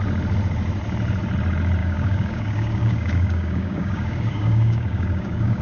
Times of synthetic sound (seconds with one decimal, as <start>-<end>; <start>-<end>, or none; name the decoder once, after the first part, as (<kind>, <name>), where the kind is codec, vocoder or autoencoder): 1.8-5.6 (codec, DAC)